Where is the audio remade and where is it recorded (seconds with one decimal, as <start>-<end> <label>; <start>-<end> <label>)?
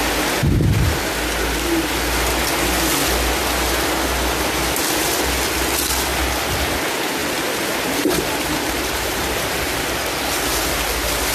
0.0-7.2 recorded; 7.2-9.9 remade; 9.9-11.3 recorded